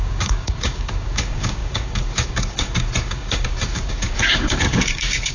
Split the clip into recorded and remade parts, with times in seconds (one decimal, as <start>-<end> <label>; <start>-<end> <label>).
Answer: 0.0-5.3 remade